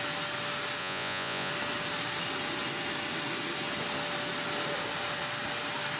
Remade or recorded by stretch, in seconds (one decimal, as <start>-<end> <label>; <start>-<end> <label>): 0.0-0.8 recorded; 0.8-1.5 remade; 1.5-6.0 recorded